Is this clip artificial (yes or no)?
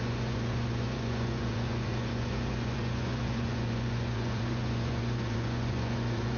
yes